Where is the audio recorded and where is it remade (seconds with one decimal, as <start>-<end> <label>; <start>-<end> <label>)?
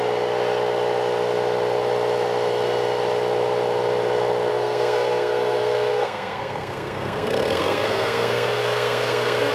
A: 0.0-4.5 recorded; 4.5-9.5 remade